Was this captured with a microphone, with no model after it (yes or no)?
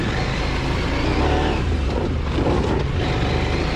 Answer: yes